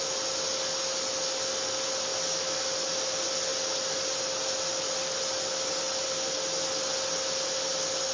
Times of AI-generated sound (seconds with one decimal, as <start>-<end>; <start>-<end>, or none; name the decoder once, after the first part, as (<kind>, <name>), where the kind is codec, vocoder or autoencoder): none